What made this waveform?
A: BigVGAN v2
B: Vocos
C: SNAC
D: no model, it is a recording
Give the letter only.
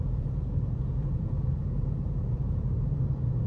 B